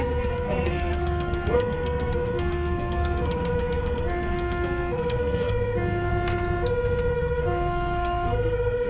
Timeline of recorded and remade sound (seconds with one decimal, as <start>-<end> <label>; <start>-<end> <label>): 0.0-6.1 remade; 6.1-7.1 recorded; 7.1-8.9 remade